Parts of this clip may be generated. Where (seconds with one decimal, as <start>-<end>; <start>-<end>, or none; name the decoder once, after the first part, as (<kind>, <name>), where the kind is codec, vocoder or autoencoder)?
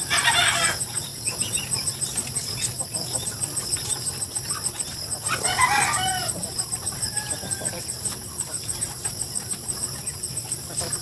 0.0-1.1 (vocoder, BigVGAN v2); 6.1-11.0